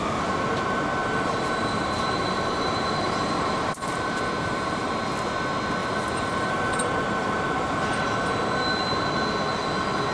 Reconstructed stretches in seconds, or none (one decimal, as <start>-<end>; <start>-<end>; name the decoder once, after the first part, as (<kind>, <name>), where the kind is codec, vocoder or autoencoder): 1.0-4.9 (vocoder, BigVGAN v2); 5.8-8.0